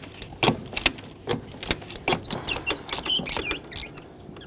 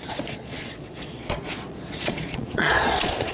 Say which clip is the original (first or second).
first